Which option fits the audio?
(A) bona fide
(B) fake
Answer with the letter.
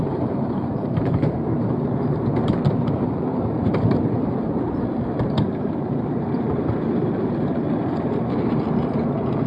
B